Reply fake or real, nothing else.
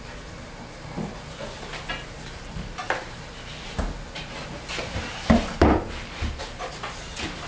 real